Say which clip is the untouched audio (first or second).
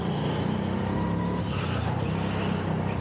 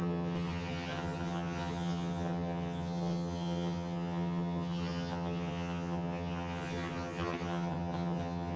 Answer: first